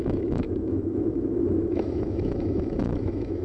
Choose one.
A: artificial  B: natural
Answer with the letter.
A